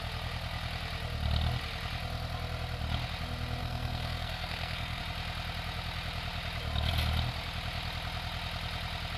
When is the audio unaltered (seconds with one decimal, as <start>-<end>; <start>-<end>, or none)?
0.0-3.6; 5.0-9.2